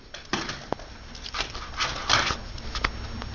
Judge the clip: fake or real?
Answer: real